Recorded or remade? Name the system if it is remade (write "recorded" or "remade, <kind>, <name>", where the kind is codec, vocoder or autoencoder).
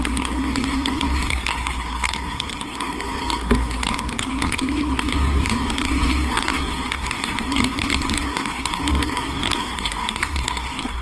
remade, codec, SNAC